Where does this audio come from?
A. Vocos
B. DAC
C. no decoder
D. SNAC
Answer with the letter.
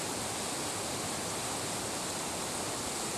C